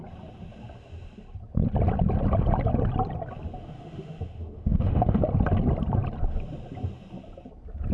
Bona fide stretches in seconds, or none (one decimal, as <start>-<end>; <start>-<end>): 0.0-3.6; 5.2-7.9

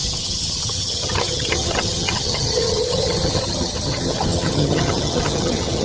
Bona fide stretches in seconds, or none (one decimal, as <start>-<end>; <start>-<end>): none

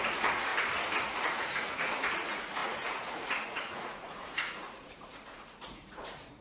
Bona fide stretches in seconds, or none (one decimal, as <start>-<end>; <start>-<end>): 0.5-1.0